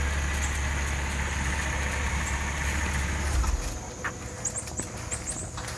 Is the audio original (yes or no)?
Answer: yes